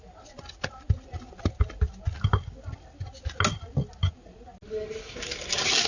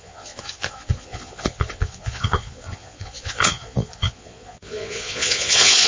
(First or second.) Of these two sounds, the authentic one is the first